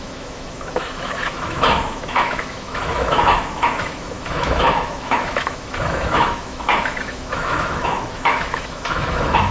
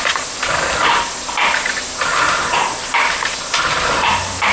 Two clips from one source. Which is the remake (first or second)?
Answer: first